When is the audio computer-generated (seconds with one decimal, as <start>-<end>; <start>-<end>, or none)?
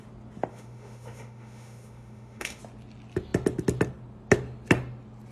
0.5-2.6